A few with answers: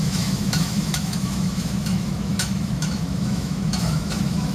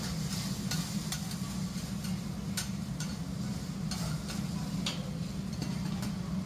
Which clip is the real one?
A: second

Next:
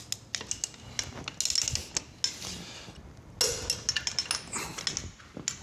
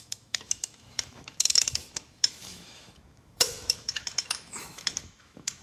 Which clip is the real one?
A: first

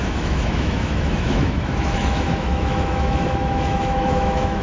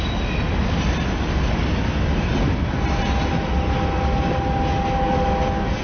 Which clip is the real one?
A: second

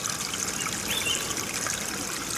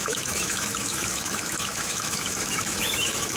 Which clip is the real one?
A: first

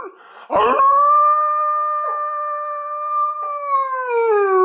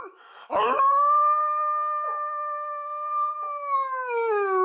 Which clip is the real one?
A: first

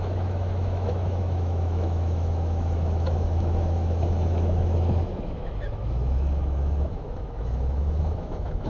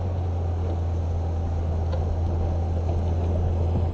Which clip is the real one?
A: second